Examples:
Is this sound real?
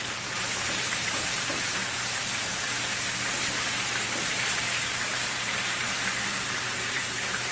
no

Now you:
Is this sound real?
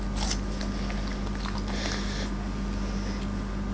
yes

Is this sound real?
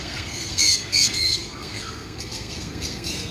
no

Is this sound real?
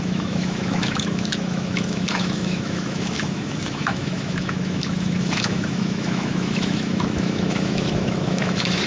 no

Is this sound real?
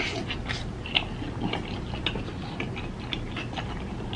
yes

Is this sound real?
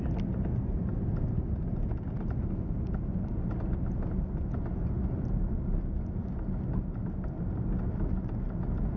yes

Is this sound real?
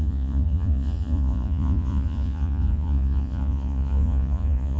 no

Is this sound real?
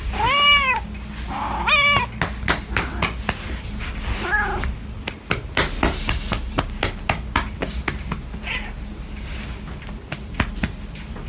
yes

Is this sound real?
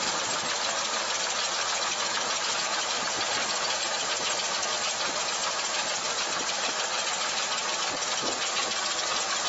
yes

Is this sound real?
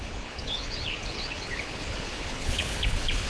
no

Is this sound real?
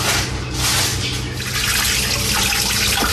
yes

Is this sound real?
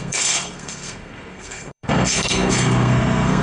no